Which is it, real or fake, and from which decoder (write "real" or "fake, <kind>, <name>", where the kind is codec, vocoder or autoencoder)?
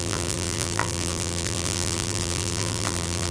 fake, vocoder, BigVGAN v2